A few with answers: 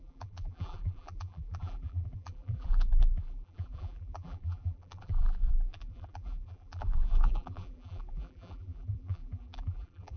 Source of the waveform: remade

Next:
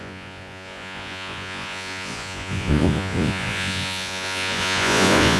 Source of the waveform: remade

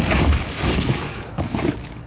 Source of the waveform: remade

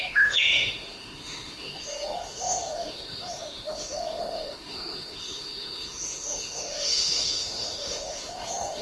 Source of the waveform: remade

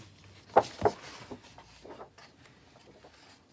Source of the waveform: recorded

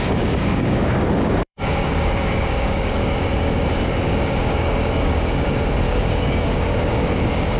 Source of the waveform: remade